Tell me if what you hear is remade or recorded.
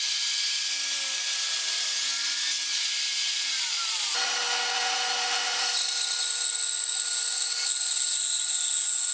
recorded